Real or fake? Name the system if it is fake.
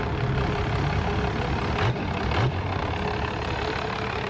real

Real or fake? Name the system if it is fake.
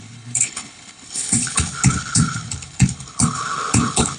fake, codec, HILCodec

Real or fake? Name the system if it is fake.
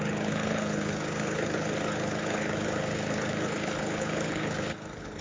fake, codec, HILCodec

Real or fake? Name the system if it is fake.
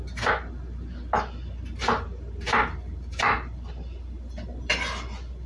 real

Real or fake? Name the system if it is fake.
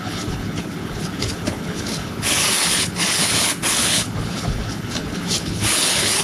fake, codec, HILCodec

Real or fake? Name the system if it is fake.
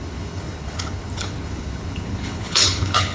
fake, codec, HILCodec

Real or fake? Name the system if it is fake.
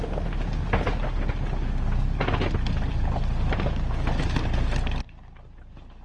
real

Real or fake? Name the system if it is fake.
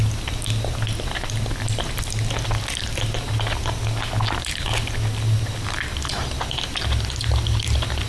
real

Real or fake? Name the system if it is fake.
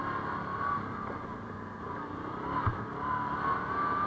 real